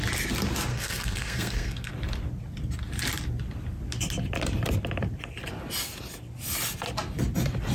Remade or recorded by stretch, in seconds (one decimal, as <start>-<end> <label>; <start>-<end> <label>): 0.0-0.7 recorded; 0.7-1.9 remade; 1.9-7.7 recorded